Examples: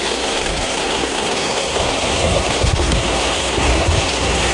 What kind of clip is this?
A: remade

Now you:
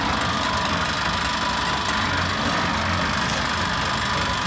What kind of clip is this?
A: recorded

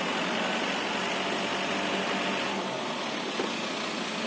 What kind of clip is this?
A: recorded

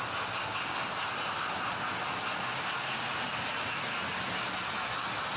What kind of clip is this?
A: recorded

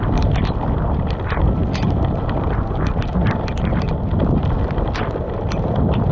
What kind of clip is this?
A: recorded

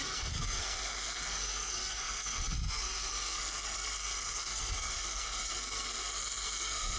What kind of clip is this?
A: remade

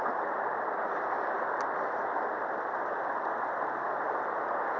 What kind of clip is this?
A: recorded